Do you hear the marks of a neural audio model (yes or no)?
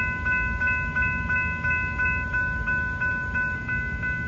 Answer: no